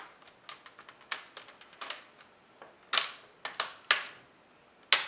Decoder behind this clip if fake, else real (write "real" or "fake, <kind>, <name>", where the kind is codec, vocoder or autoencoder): real